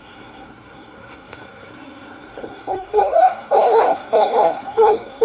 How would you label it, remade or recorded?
remade